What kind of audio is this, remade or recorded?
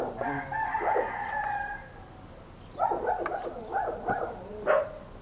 recorded